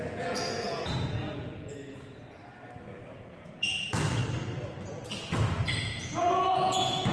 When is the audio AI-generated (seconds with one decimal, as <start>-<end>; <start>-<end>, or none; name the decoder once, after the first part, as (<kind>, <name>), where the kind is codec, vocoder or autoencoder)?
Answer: 0.0-2.4 (vocoder, Vocos); 3.1-4.2; 5.8-7.1